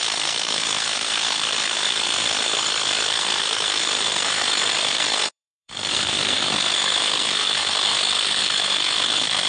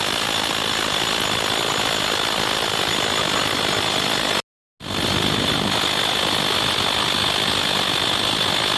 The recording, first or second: second